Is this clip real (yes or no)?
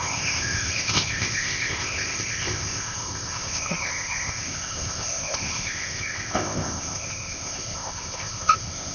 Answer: no